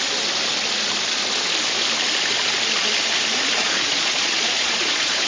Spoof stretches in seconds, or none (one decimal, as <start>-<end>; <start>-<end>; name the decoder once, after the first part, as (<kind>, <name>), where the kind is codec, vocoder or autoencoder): 3.6-5.3 (vocoder, Vocos)